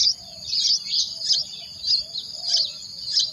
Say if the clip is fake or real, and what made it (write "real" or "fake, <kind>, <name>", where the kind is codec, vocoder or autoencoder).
real